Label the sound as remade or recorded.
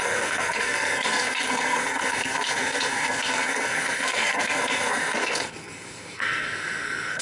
remade